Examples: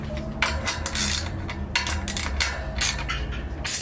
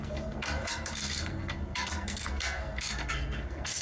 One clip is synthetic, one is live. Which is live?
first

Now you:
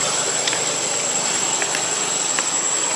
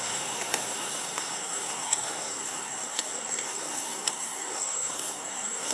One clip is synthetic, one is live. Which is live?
first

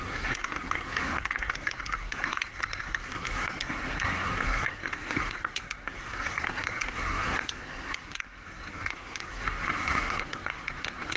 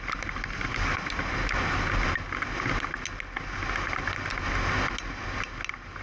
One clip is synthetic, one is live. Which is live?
second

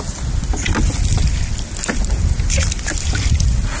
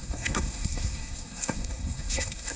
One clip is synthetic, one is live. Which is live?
first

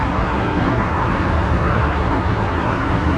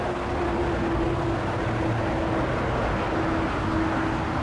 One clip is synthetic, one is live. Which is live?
second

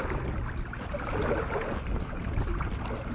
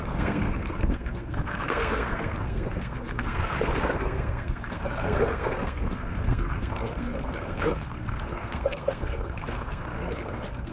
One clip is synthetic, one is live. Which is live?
first